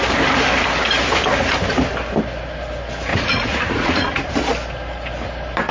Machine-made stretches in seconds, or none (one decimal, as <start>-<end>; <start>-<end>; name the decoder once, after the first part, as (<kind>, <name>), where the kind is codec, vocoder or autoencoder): 3.1-4.3 (vocoder, Vocos)